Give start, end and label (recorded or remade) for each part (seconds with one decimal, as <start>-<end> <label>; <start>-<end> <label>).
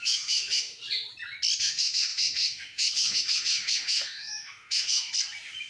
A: 0.0-0.8 remade; 0.8-1.6 recorded; 1.6-5.1 remade; 5.1-5.7 recorded